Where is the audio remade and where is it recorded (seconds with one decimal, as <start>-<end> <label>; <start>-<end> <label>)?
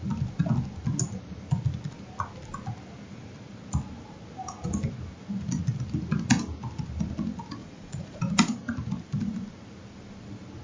0.0-7.6 recorded; 7.6-8.2 remade; 8.2-10.6 recorded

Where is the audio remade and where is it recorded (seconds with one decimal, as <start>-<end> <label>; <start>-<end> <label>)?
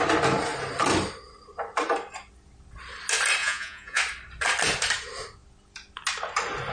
0.0-3.4 recorded; 3.4-4.0 remade; 4.0-6.7 recorded